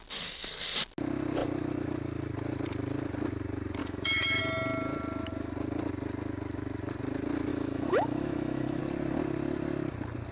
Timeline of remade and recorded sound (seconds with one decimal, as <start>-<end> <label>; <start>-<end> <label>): 0.0-3.8 recorded; 3.8-4.4 remade; 4.4-7.5 recorded; 7.5-8.8 remade; 8.8-10.3 recorded